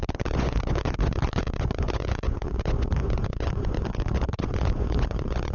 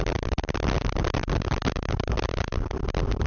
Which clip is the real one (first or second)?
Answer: second